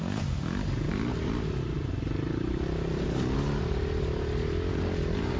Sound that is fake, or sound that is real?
real